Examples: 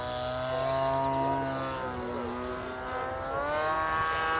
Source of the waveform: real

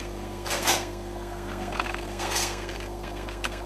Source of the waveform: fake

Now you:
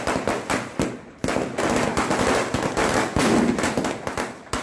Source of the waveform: real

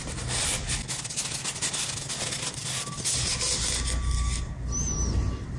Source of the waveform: real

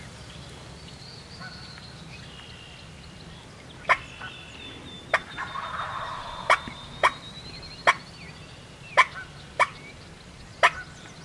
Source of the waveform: real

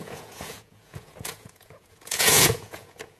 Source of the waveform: fake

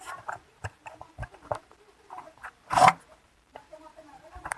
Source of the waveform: fake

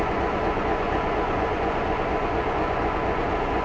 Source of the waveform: fake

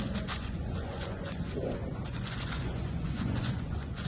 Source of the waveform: fake